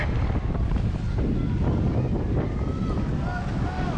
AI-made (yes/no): no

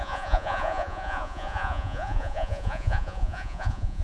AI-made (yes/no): yes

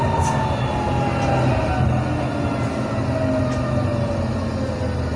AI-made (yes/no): no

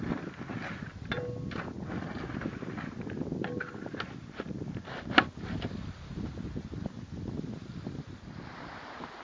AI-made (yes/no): no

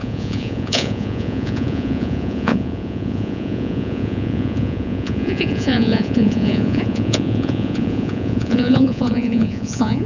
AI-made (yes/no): yes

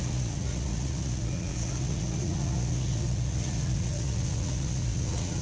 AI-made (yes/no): yes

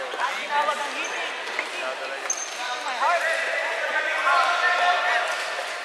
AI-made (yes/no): no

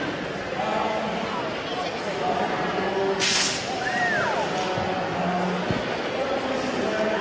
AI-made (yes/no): no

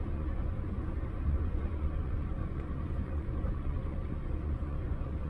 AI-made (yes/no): yes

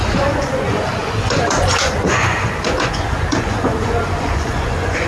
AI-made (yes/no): yes